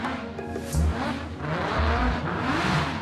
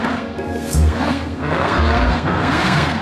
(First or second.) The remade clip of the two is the second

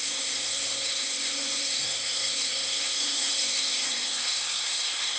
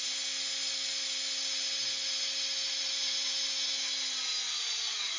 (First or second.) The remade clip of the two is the first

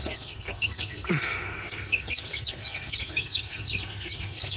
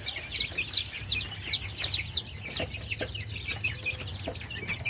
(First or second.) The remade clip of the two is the first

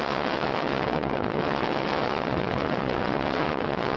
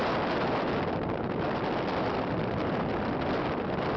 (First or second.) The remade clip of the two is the first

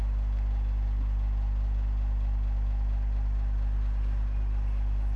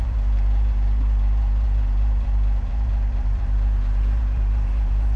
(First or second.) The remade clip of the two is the second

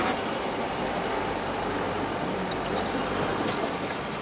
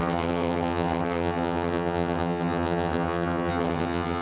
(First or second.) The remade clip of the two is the second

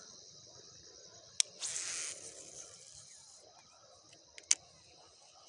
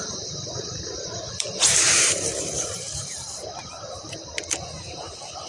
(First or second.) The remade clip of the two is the second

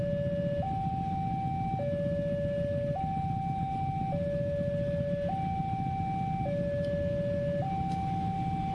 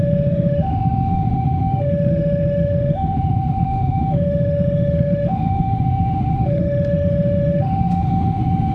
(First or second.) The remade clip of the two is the second